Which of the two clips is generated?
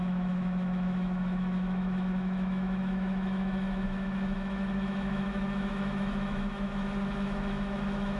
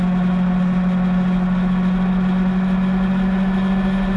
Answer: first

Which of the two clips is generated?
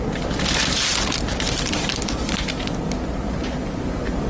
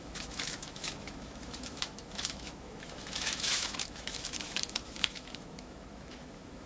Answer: second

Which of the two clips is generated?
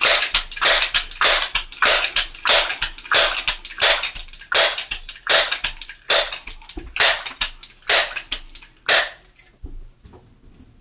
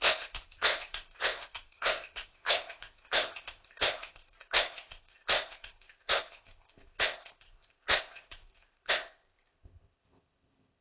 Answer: second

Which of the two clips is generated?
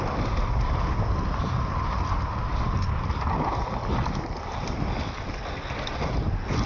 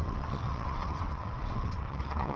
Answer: second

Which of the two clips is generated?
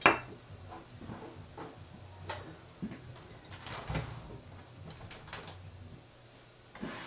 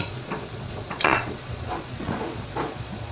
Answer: second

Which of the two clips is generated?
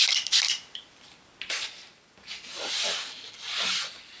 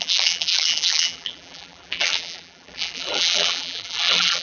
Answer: second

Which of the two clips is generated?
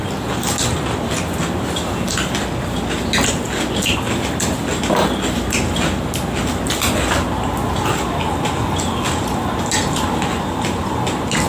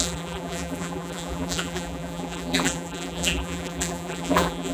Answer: second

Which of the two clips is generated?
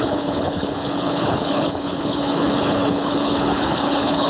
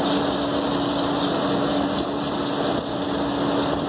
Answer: first